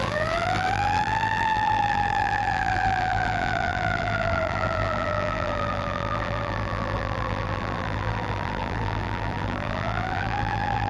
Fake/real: fake